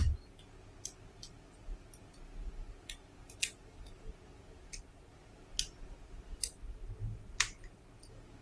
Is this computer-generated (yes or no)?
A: no